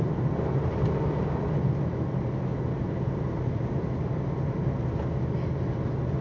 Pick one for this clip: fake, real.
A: real